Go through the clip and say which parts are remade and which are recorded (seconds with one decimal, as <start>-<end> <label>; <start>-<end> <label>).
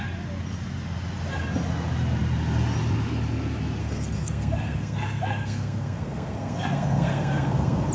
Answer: 0.0-3.8 recorded; 3.8-7.9 remade